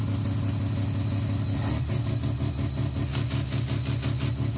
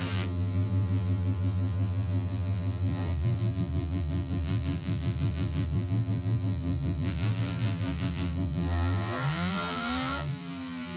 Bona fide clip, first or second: first